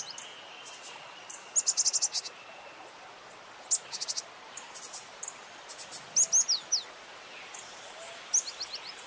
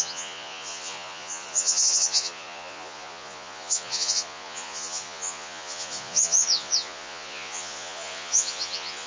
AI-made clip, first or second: second